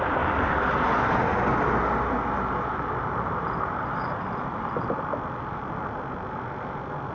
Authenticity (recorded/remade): recorded